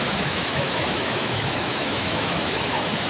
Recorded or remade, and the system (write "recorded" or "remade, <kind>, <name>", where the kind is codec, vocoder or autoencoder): remade, autoencoder, DAC-VAE